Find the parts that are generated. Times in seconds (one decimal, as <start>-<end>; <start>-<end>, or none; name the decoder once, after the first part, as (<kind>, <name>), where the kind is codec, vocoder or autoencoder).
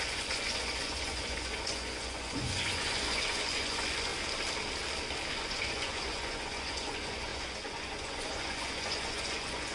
0.0-4.1 (vocoder, Vocos); 5.3-9.7